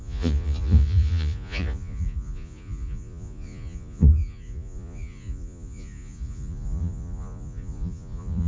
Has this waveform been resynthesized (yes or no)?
yes